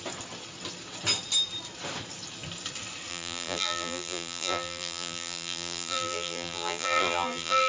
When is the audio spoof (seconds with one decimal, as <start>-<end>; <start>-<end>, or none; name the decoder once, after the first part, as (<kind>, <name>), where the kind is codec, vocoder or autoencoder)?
3.1-7.7 (vocoder, BigVGAN v2)